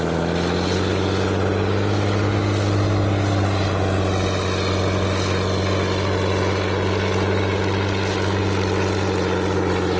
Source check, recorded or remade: recorded